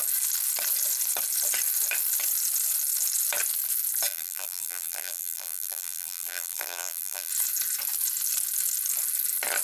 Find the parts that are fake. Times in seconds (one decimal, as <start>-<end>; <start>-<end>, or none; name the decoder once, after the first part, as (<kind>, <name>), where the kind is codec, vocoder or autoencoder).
4.1-7.3 (vocoder, BigVGAN v2)

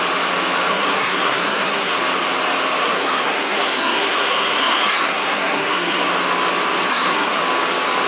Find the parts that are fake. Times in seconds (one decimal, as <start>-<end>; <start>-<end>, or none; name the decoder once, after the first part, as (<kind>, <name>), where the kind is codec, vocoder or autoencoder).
0.7-2.0 (codec, SNAC); 2.8-6.1; 6.9-7.4

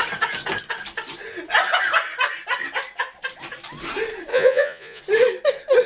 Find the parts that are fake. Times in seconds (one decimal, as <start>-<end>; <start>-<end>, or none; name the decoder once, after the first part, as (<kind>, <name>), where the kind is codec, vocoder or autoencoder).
4.3-5.0 (vocoder, Vocos)

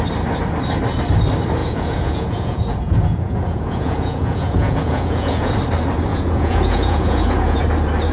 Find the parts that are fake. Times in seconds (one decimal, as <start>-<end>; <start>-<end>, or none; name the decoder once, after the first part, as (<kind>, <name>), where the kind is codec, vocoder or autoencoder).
1.6-5.5 (vocoder, Vocos); 6.1-7.6

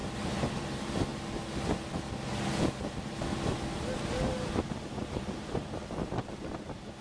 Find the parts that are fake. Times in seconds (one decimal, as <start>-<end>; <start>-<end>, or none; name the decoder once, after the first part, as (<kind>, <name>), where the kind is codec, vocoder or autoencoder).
0.0-1.1 (vocoder, BigVGAN v2); 5.0-7.0

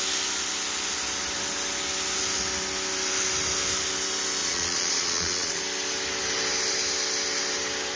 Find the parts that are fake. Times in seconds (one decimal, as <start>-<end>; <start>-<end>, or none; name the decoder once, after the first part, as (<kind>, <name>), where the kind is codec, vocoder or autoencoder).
4.4-5.6 (vocoder, Vocos)

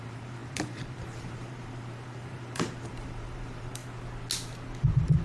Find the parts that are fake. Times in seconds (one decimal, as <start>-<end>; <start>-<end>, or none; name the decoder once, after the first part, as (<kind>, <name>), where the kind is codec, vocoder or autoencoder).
0.0-3.8 (vocoder, BigVGAN v2)

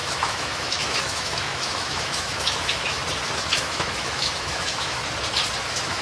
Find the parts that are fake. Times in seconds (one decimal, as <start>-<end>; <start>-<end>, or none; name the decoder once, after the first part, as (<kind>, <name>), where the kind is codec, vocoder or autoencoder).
0.0-3.0 (autoencoder, DAC-VAE); 3.6-5.0; 5.6-6.0